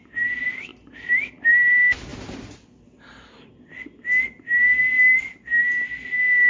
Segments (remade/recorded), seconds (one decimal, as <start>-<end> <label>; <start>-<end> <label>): 0.0-6.5 recorded